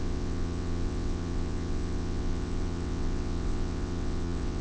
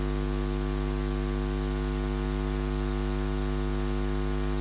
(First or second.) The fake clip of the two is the first